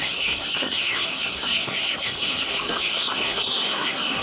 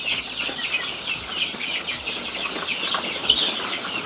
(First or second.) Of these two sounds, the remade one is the first